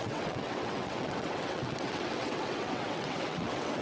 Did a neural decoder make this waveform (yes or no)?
yes